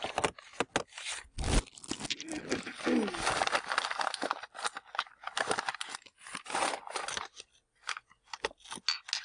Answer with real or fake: real